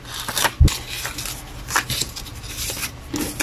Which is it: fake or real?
real